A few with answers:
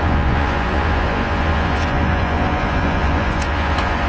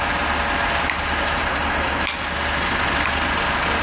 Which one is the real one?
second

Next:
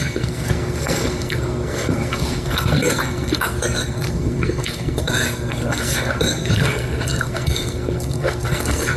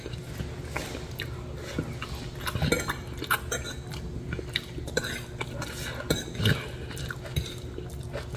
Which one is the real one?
second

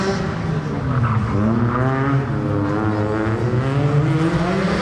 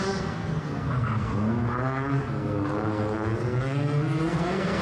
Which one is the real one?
first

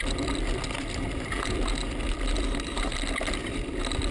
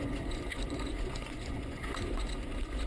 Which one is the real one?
first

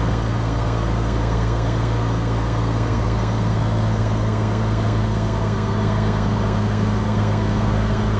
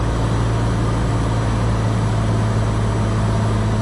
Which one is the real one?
second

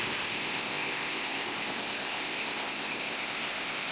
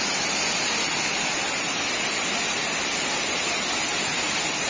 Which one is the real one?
second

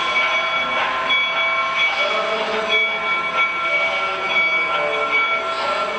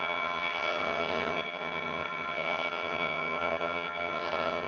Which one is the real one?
first